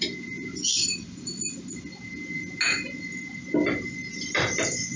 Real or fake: real